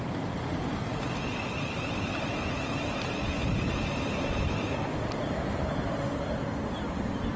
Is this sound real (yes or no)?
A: yes